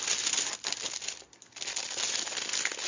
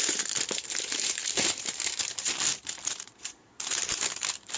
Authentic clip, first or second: first